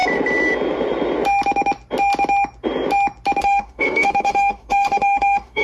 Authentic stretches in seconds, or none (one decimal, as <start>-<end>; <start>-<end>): 0.0-3.4